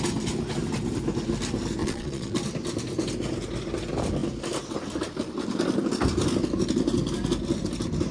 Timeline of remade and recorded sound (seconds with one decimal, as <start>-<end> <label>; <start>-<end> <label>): 0.0-1.8 recorded; 1.8-2.4 remade; 2.4-8.1 recorded